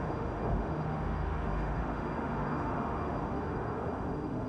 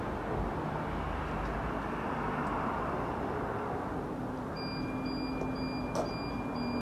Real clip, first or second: second